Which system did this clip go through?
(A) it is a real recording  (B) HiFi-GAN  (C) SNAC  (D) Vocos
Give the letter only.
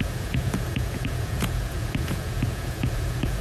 D